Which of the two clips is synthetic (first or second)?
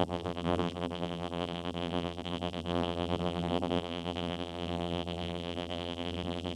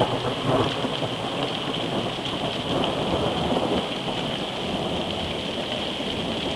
first